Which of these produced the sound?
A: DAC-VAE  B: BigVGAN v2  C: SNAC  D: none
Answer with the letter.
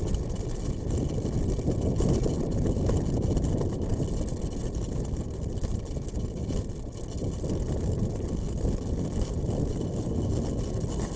D